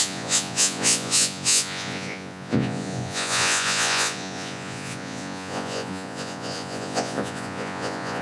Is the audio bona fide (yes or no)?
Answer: no